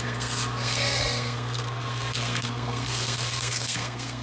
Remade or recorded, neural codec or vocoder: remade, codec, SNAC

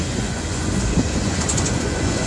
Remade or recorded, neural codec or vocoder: remade, vocoder, Vocos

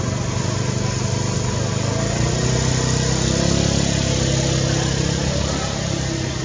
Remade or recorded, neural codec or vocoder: recorded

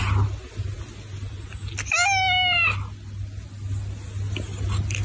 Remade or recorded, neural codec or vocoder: recorded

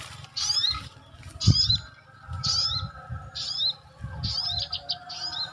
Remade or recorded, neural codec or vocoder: recorded